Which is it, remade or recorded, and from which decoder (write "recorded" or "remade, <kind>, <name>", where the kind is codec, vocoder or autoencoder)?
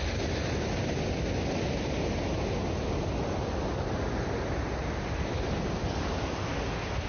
recorded